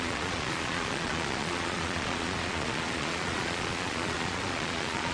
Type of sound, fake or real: fake